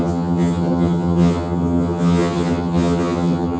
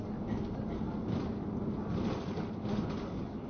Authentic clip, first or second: second